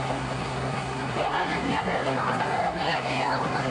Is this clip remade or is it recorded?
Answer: remade